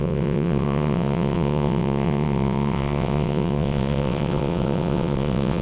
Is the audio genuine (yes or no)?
no